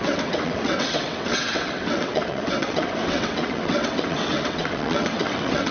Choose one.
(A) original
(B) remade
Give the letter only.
B